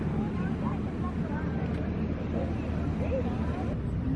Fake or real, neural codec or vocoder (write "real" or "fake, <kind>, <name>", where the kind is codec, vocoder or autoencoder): real